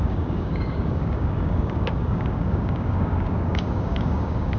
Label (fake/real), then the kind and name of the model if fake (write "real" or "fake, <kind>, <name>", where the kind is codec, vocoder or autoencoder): fake, codec, DAC